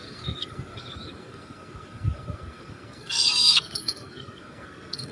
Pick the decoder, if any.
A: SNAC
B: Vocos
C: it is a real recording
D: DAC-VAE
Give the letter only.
A